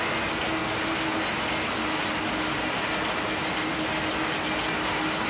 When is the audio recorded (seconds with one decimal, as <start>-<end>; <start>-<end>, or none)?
0.0-5.3

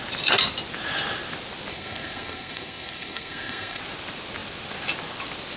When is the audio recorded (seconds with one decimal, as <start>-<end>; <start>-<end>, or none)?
0.0-1.7; 3.8-5.6

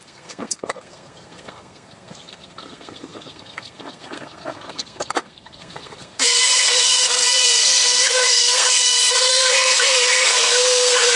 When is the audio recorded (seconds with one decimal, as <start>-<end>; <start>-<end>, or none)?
none